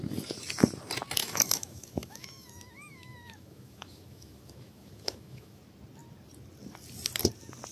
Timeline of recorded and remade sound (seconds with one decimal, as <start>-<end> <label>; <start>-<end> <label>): 0.0-1.2 recorded; 1.2-5.6 remade; 5.6-7.7 recorded